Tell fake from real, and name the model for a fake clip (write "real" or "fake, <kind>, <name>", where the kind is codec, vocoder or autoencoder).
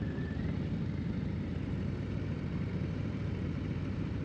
fake, vocoder, BigVGAN v2